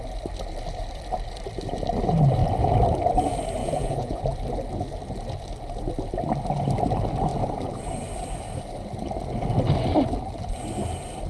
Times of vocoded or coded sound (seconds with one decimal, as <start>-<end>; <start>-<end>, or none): 3.6-4.2